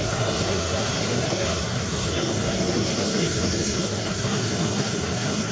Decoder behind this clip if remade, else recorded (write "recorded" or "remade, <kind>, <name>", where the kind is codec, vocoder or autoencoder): remade, codec, SNAC